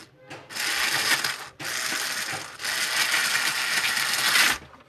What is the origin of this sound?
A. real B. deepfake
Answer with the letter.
A